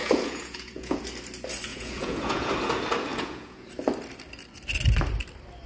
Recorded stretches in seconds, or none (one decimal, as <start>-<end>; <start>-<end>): 1.0-1.7; 2.5-3.1; 3.7-5.7